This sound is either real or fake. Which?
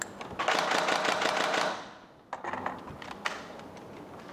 real